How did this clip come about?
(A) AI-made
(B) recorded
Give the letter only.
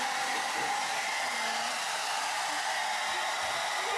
B